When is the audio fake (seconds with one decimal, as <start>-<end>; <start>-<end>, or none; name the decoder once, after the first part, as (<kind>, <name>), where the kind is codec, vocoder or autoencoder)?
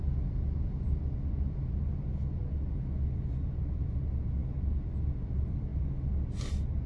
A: none